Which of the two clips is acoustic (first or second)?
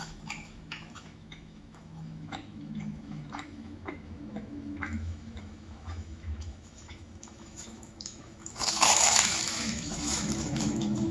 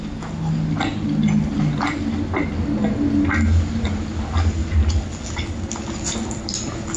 second